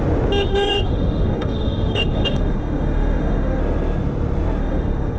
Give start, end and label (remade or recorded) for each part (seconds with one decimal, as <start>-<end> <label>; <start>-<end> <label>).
0.0-0.5 recorded; 0.5-3.6 remade; 3.6-4.6 recorded; 4.6-5.2 remade